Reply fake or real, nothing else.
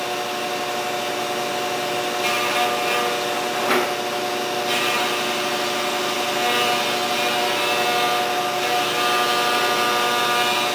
real